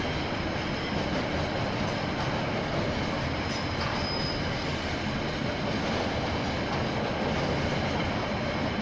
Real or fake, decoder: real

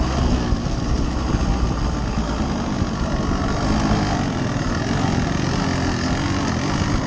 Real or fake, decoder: real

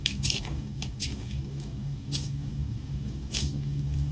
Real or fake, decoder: fake, codec, DAC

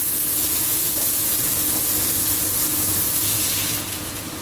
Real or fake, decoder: fake, vocoder, Vocos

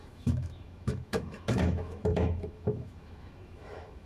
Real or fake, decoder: fake, autoencoder, DAC-VAE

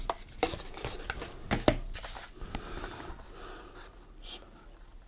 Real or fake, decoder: real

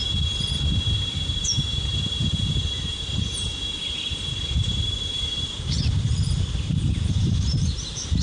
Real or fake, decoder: fake, vocoder, BigVGAN v2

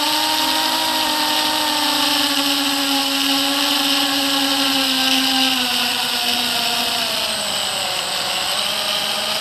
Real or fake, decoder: real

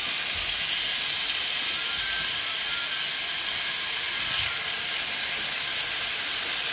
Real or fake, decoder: real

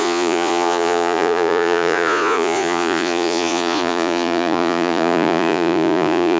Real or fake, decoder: fake, vocoder, Vocos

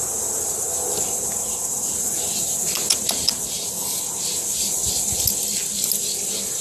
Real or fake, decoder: real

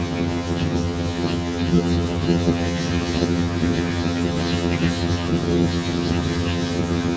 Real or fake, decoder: fake, vocoder, HiFi-GAN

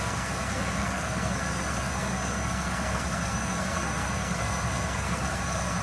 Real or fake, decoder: fake, codec, SNAC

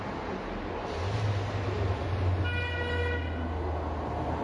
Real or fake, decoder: real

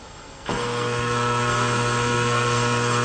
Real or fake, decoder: fake, codec, SNAC